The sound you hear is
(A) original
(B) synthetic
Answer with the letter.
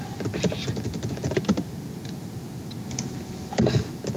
A